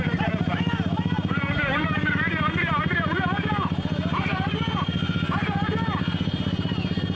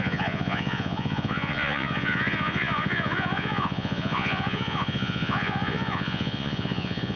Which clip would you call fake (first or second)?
second